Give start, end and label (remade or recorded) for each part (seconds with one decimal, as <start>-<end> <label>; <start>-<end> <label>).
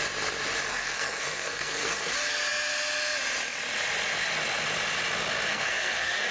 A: 0.0-0.7 recorded; 0.7-2.1 remade; 2.1-5.5 recorded; 5.5-6.3 remade